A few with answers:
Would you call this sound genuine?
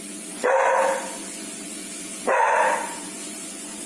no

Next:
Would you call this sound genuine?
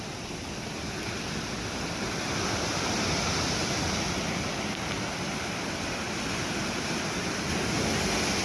yes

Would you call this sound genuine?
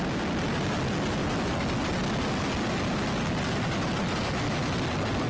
yes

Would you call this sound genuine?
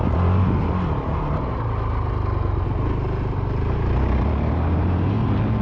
yes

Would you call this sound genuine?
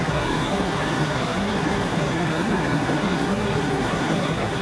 no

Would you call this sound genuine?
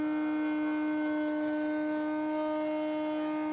yes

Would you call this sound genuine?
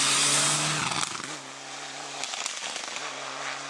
yes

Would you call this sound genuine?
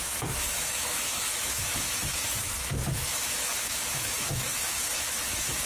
no